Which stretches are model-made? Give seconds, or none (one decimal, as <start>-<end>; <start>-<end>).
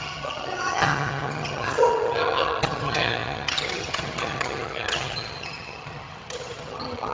0.0-7.1